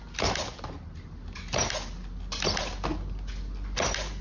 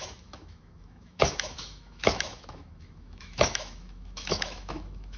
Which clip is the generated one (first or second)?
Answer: second